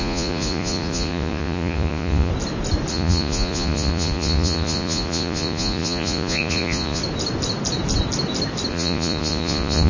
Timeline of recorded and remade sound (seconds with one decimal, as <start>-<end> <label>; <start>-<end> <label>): 0.0-2.3 remade; 2.3-2.9 recorded; 2.9-7.0 remade; 7.0-8.7 recorded; 8.7-9.9 remade